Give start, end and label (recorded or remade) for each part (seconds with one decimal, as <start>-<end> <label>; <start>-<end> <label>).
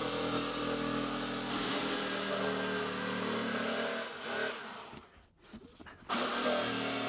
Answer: 0.0-7.1 recorded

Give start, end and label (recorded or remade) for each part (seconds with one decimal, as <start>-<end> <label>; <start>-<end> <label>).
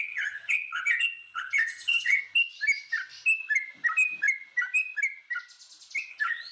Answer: 0.0-2.2 remade; 2.2-6.1 recorded; 6.1-6.5 remade